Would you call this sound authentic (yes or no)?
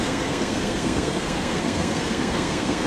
no